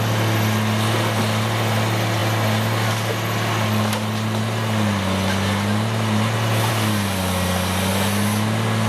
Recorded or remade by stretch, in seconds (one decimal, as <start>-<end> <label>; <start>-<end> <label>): 0.0-8.9 recorded